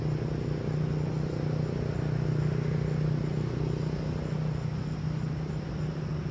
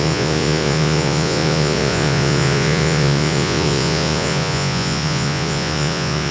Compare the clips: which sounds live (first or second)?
first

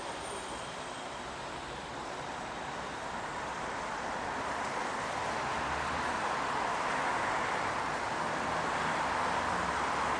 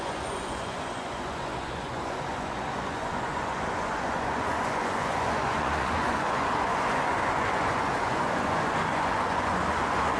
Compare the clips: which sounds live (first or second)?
first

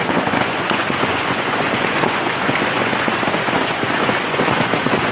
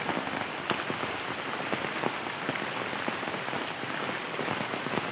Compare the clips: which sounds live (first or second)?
second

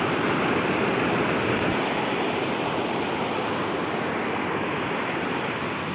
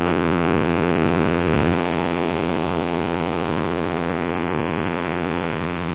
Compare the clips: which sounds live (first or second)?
first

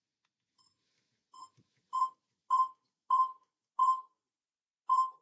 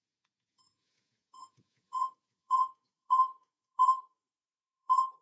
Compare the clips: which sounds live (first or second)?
first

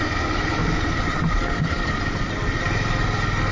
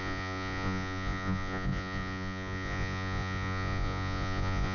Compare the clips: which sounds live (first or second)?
first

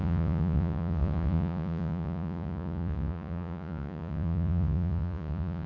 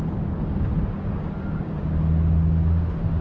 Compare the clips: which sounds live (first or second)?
second